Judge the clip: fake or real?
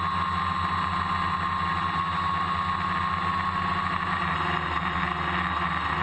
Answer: real